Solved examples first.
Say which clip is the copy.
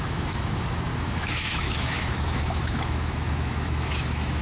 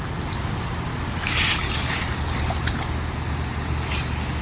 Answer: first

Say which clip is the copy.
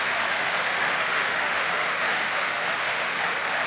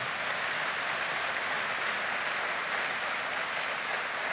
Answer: first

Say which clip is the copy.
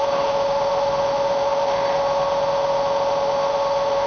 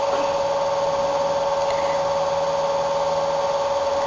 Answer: first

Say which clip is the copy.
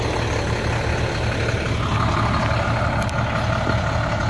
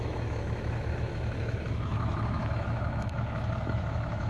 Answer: second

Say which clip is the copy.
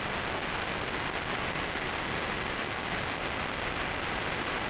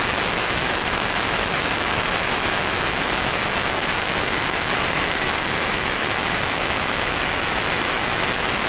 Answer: second